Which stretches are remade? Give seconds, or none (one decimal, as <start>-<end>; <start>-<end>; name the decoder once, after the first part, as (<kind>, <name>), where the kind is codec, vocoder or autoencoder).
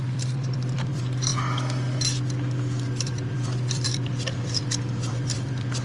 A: 0.0-1.3 (vocoder, BigVGAN v2); 2.9-5.8